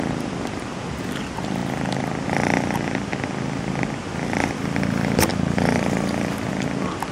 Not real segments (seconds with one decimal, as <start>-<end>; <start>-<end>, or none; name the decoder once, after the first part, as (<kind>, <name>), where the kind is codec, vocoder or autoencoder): none